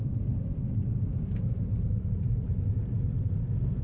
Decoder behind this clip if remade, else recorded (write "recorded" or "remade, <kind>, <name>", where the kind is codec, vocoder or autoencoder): remade, vocoder, BigVGAN v2